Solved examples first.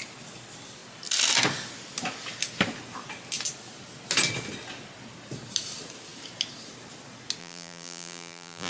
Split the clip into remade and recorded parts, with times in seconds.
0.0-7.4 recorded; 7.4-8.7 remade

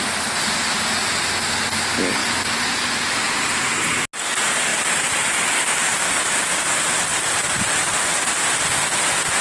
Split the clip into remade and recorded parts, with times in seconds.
0.0-2.2 recorded; 2.2-2.9 remade; 2.9-9.4 recorded

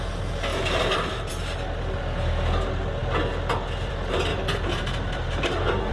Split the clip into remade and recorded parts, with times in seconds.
0.0-0.5 recorded; 0.5-1.3 remade; 1.3-4.3 recorded; 4.3-5.9 remade

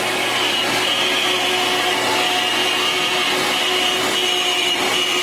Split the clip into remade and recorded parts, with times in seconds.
0.0-5.2 recorded

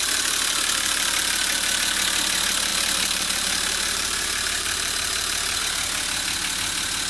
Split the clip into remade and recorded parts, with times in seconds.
0.0-2.7 recorded; 2.7-5.6 remade; 5.6-7.1 recorded

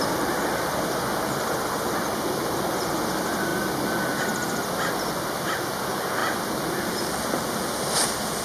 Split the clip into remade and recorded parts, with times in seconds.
0.0-6.2 recorded; 6.2-7.9 remade; 7.9-8.4 recorded